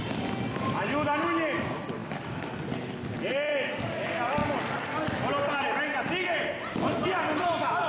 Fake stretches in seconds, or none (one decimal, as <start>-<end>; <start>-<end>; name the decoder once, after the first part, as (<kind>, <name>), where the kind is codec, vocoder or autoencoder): none